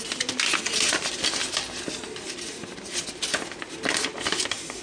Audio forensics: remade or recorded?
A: recorded